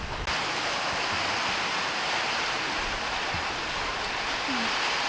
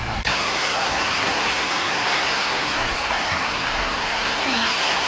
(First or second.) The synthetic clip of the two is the second